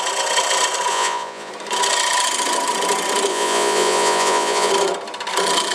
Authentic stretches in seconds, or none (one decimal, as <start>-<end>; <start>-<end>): 0.0-0.9; 1.5-3.3; 4.7-5.7

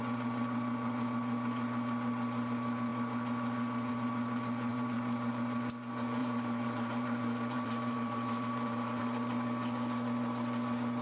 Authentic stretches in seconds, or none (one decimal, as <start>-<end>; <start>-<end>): 0.0-4.7; 5.3-6.2; 9.0-11.0

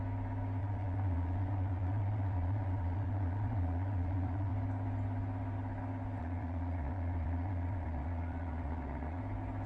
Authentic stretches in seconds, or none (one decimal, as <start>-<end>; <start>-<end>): 0.0-0.6; 4.5-6.2; 9.2-9.7

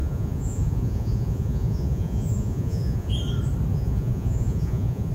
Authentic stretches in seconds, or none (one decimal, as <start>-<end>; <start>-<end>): 3.1-3.7

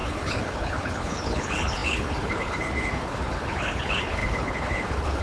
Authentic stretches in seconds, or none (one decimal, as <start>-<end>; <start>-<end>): none

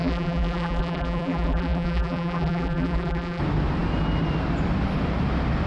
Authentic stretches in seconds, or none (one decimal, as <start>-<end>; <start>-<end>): 3.4-5.7